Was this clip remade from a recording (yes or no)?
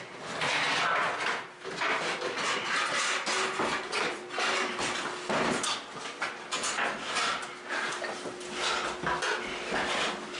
no